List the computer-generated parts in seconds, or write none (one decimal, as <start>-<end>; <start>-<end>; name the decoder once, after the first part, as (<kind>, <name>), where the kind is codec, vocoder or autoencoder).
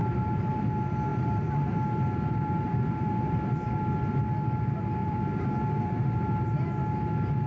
0.0-0.6 (vocoder, BigVGAN v2); 1.1-3.8; 5.0-6.6